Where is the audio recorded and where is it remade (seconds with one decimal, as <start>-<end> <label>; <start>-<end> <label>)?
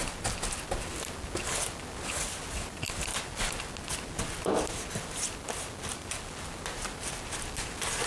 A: 0.0-8.1 recorded